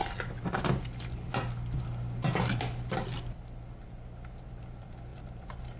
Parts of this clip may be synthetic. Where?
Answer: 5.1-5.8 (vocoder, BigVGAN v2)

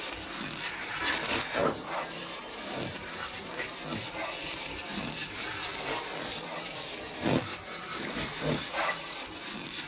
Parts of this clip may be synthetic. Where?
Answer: 1.6-3.5 (vocoder, BigVGAN v2); 7.5-9.2

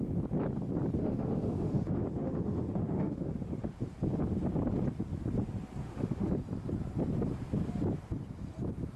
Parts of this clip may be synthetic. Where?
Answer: 1.0-3.7 (autoencoder, DAC-VAE); 5.8-6.3

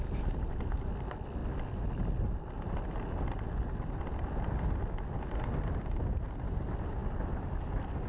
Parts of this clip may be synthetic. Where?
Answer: none

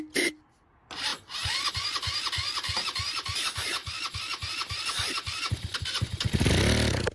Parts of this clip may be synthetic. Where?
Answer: none

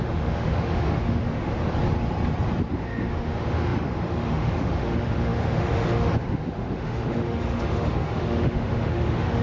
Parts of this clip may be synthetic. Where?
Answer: 0.0-1.5 (autoencoder, DAC-VAE); 2.7-9.4